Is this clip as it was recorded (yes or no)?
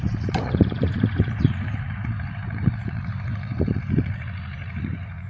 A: no